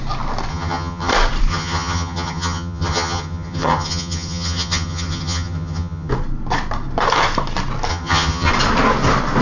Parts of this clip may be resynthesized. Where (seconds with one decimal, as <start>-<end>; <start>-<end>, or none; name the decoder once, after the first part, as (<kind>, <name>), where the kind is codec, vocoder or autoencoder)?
0.5-1.1 (vocoder, HiFi-GAN); 1.5-6.1; 7.9-8.5